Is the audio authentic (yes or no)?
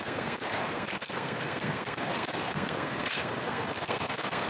no